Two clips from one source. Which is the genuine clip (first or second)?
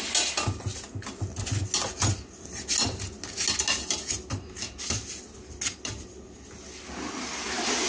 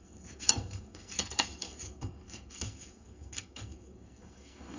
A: first